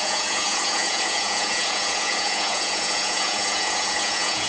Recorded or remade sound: remade